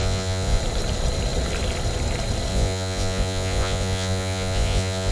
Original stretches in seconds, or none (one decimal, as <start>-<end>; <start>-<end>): 0.6-2.5